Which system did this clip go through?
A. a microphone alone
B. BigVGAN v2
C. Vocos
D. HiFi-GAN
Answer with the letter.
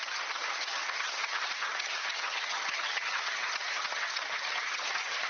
D